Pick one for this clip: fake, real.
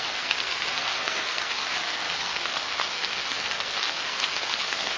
fake